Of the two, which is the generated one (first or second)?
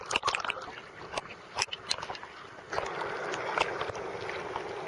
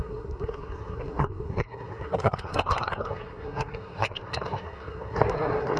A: second